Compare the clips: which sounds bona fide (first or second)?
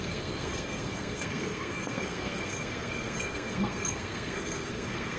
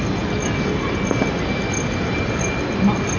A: second